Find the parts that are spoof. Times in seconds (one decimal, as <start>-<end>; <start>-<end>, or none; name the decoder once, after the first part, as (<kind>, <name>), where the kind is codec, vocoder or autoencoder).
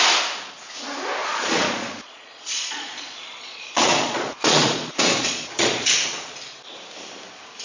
1.3-5.9 (vocoder, Vocos)